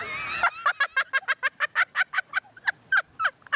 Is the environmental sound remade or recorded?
recorded